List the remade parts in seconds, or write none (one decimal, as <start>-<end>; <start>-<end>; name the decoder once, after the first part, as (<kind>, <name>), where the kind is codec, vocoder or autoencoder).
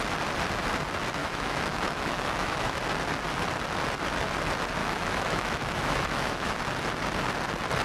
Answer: 1.2-2.8 (autoencoder, DAC-VAE); 4.8-6.6